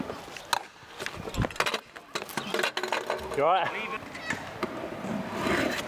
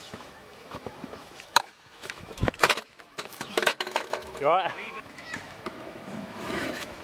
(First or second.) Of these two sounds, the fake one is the second